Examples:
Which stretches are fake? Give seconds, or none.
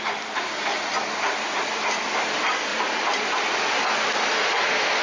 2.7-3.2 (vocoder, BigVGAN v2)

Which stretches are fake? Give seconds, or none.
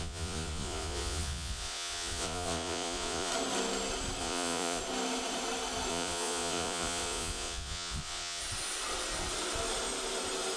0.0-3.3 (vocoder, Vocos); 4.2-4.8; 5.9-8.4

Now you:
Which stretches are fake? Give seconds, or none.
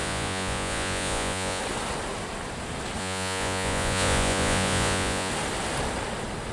0.0-1.6 (vocoder, Vocos); 3.0-5.3